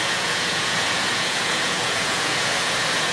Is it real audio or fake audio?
fake